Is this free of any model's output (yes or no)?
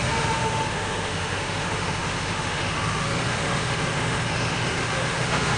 no